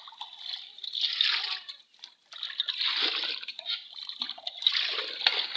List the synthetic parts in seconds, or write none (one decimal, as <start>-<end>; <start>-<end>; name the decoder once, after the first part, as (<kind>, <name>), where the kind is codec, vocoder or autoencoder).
none